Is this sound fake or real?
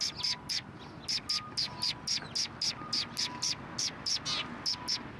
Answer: real